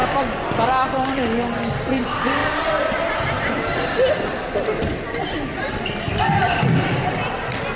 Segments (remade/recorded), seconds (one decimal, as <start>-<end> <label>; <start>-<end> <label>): 0.0-7.8 recorded